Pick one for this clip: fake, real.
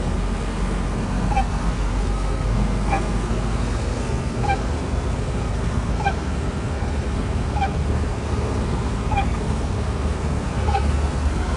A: fake